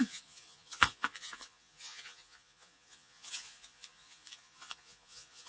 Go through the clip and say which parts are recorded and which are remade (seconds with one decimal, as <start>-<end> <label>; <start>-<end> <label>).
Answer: 0.0-5.5 remade